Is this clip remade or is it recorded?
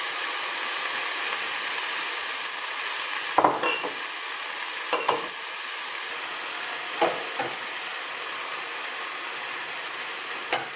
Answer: recorded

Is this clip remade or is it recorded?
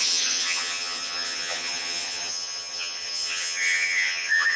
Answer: remade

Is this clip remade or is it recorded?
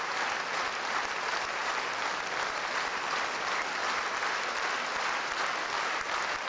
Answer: recorded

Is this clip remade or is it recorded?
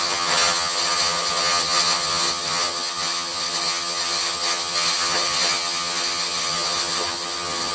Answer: remade